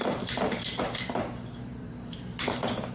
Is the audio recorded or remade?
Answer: remade